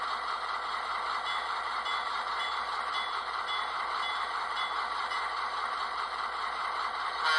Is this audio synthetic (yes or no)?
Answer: no